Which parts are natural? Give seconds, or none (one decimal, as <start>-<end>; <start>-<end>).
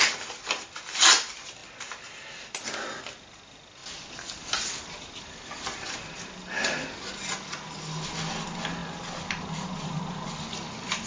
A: 0.0-11.1